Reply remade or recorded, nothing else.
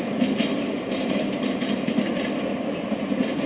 recorded